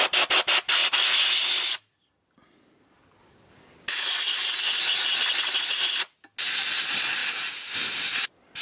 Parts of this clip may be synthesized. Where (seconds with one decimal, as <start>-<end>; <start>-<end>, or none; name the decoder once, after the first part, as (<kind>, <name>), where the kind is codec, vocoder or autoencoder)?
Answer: none